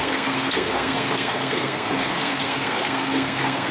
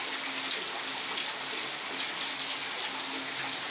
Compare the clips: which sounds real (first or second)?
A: second